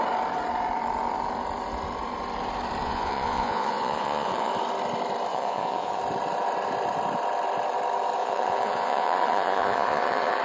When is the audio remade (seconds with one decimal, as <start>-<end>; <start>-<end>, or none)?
2.8-4.5; 5.3-6.0; 8.2-10.4